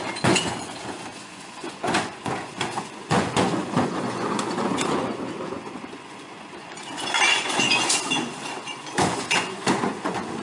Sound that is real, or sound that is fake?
fake